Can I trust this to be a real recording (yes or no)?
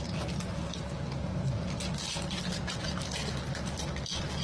yes